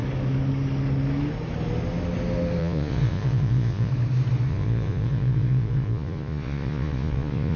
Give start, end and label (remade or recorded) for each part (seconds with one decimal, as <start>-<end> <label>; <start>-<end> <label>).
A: 0.0-2.6 recorded; 2.6-3.9 remade; 3.9-4.5 recorded; 4.5-7.6 remade